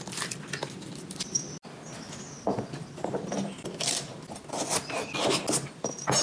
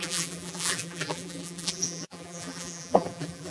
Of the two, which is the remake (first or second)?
second